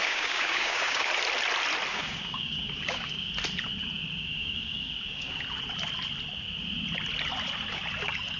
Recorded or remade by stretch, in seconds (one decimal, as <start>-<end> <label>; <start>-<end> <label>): 0.0-1.1 remade; 1.1-1.9 recorded; 1.9-3.3 remade; 3.3-4.2 recorded; 4.2-5.4 remade; 5.4-8.4 recorded

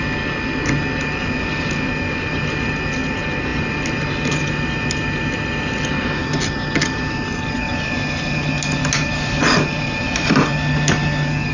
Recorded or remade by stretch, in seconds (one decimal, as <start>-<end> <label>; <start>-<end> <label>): 0.0-11.5 recorded

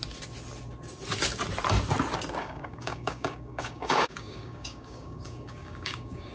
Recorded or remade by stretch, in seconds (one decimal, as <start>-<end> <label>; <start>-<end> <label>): 0.0-2.4 recorded; 2.4-6.3 remade

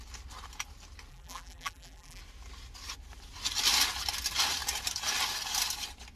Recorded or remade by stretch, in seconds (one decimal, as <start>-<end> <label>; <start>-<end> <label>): 0.0-1.1 recorded; 1.1-2.2 remade; 2.2-6.2 recorded

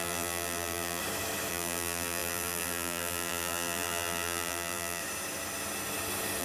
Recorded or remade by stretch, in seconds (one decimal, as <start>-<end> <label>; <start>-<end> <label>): 0.0-1.0 remade; 1.0-1.5 recorded; 1.5-5.0 remade; 5.0-6.4 recorded

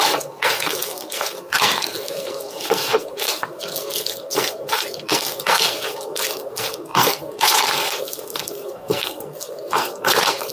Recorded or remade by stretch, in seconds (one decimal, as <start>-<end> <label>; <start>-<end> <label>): 0.0-10.5 remade

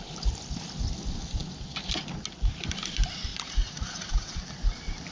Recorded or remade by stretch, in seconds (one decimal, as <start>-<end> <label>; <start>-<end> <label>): 0.0-3.3 recorded; 3.3-4.4 remade; 4.4-5.1 recorded

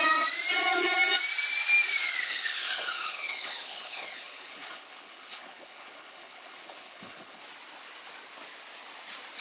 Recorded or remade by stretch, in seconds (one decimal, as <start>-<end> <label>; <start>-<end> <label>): 0.0-2.2 recorded; 2.2-7.4 remade; 7.4-9.4 recorded